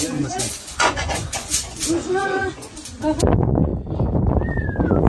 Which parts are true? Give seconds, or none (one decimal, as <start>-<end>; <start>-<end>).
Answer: 3.7-4.3